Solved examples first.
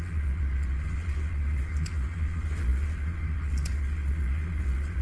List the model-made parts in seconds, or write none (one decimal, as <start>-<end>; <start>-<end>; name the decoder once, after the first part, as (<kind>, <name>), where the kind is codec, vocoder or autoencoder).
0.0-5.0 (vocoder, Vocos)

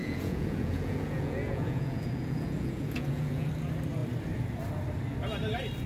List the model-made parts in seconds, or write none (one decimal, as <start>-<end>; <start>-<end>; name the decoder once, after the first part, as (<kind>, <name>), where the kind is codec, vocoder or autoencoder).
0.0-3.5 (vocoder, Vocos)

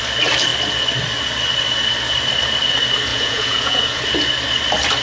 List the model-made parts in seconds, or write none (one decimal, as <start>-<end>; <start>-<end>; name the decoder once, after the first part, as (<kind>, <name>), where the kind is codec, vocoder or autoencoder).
3.1-4.0 (vocoder, Vocos)

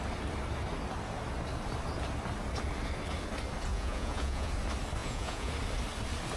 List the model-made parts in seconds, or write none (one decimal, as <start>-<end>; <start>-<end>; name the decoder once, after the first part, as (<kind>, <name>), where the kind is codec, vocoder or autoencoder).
3.7-4.5 (vocoder, Vocos); 5.0-5.5

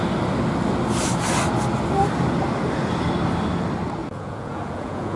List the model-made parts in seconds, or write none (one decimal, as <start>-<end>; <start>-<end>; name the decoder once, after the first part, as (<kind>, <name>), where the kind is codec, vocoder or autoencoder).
4.0-5.2 (vocoder, Vocos)

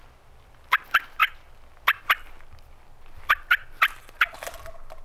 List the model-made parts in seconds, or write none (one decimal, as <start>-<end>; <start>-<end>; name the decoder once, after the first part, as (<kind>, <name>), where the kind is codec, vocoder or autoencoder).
none

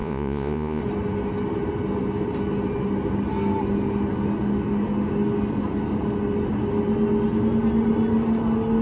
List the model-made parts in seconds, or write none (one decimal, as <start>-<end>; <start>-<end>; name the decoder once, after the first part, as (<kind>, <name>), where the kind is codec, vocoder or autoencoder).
0.0-0.8 (vocoder, Vocos)

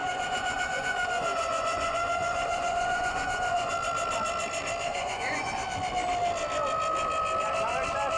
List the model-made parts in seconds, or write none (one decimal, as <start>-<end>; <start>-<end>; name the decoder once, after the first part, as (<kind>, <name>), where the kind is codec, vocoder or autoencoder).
0.0-3.7 (vocoder, Vocos); 4.9-5.5